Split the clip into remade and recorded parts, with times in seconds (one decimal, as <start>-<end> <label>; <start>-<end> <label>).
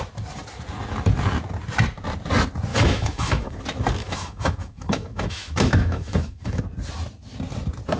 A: 0.0-2.7 recorded; 2.7-3.6 remade; 3.6-4.0 recorded; 4.0-6.6 remade; 6.6-8.0 recorded